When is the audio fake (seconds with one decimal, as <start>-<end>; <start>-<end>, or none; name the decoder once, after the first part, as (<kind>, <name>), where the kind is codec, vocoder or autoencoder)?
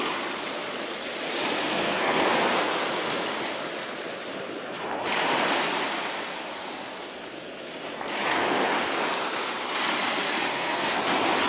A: 1.6-2.2 (codec, SNAC); 10.5-11.0